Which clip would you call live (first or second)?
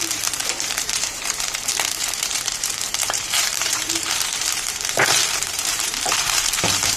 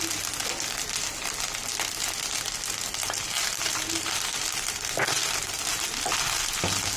second